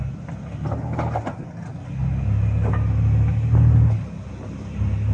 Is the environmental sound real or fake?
real